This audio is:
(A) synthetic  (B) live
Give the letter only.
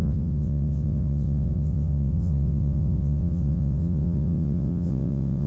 A